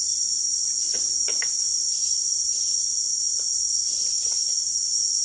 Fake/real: real